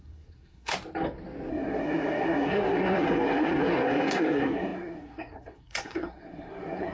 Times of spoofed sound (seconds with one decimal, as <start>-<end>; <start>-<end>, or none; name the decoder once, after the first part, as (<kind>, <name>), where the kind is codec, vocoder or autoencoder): 0.0-0.7 (codec, SNAC); 1.5-6.9

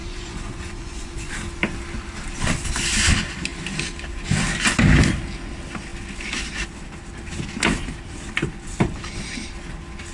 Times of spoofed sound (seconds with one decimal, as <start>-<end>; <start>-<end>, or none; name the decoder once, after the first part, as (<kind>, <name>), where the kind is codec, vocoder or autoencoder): 0.0-1.3 (vocoder, Vocos)